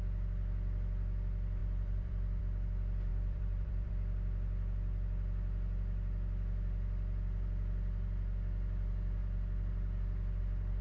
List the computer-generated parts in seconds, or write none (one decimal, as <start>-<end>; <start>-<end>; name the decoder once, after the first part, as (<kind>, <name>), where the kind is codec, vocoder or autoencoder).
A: 1.6-2.4 (vocoder, BigVGAN v2); 3.1-3.9